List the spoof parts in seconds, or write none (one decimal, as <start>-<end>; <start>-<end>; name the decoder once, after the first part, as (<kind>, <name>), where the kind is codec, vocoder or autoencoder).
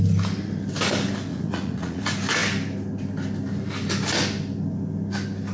1.3-2.0 (vocoder, Vocos)